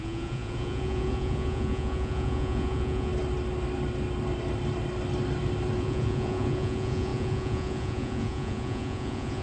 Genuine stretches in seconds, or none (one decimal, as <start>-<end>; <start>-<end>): 3.1-5.8